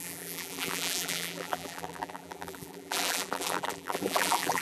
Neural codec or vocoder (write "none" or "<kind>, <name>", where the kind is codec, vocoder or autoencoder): vocoder, BigVGAN v2